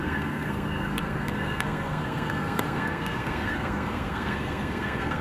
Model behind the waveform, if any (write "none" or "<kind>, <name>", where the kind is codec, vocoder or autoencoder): codec, SNAC